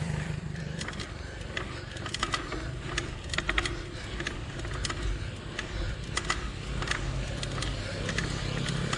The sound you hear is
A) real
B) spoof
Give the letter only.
A